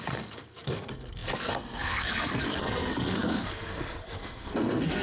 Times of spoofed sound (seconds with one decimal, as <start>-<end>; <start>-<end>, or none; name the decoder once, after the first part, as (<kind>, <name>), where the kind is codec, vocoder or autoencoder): 0.0-5.0 (codec, SNAC)